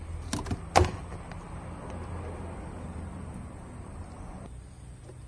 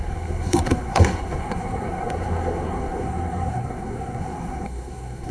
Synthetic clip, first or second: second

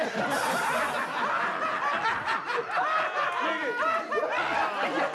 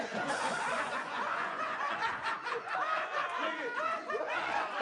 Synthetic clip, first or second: second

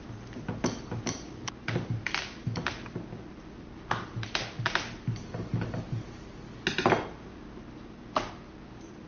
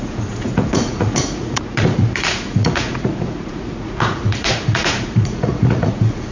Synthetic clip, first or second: second